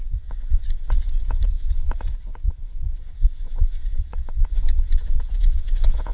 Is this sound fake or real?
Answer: fake